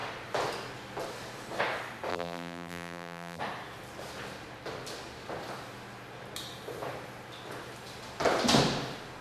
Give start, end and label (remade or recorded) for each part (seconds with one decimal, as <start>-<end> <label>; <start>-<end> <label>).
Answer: 0.0-2.1 recorded; 2.1-3.4 remade; 3.4-9.2 recorded